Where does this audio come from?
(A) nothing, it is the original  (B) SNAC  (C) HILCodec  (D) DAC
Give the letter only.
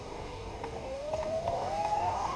D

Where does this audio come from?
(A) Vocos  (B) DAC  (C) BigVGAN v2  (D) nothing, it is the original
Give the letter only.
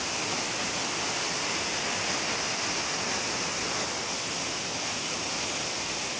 D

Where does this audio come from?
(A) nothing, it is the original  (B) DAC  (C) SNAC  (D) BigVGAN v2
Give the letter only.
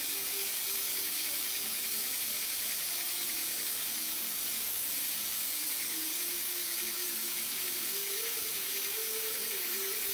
B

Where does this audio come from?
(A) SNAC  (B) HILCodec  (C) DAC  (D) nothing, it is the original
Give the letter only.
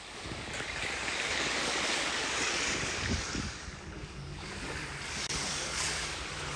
C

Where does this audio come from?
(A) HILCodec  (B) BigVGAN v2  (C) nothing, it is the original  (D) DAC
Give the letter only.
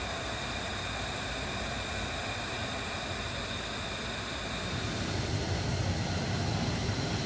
C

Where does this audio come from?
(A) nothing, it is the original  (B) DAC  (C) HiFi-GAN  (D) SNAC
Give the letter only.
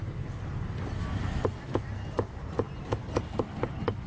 A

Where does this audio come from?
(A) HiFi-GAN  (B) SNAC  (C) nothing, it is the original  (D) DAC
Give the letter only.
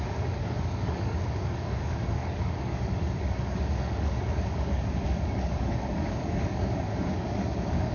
D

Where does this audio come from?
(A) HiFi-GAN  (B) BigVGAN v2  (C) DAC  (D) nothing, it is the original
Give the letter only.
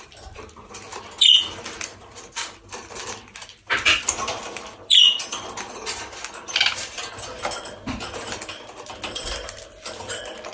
D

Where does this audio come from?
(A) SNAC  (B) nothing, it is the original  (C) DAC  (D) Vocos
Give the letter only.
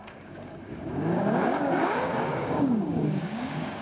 C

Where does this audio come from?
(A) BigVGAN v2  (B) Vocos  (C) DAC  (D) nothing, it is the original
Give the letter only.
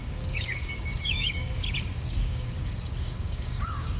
C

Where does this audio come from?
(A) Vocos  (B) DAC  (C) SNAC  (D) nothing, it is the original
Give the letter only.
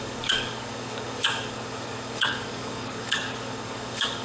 B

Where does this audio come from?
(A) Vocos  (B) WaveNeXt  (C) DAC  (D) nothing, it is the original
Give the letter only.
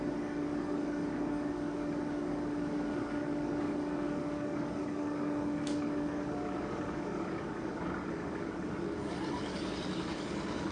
C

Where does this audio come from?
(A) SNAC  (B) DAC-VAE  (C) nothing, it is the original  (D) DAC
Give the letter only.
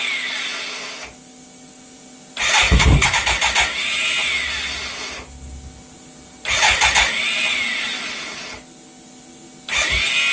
C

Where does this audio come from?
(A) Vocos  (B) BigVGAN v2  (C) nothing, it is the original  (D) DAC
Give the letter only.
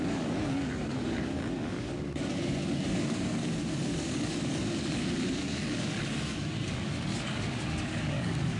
D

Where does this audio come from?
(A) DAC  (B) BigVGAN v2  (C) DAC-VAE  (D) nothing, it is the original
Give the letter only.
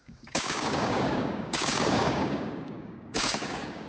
A